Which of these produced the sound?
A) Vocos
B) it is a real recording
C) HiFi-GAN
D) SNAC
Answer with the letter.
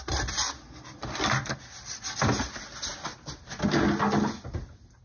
B